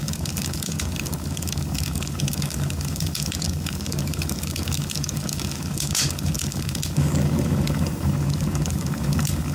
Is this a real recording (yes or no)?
no